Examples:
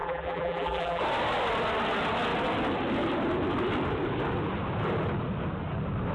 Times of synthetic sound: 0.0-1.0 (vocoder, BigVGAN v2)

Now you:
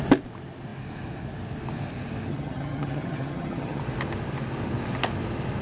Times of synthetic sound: 2.3-3.8 (vocoder, HiFi-GAN)

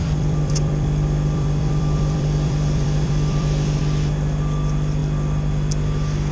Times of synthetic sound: 0.0-3.8 (vocoder, BigVGAN v2)

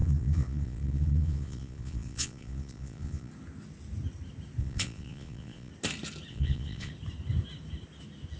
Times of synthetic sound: 0.0-3.3 (vocoder, Vocos); 4.6-5.7; 6.3-6.9